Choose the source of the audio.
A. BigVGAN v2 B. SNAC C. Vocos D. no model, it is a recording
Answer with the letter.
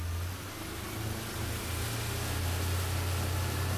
D